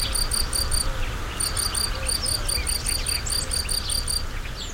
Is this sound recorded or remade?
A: recorded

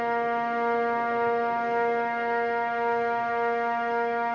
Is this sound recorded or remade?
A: remade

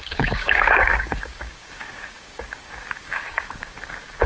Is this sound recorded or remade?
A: remade